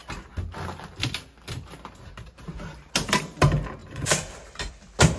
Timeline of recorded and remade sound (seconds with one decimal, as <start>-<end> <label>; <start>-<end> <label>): 0.0-3.8 recorded; 3.8-4.7 remade; 4.7-5.2 recorded